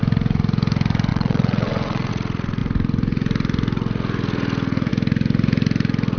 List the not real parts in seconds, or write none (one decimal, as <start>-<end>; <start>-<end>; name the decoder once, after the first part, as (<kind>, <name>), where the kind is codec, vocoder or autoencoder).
1.1-2.1 (vocoder, WaveNeXt)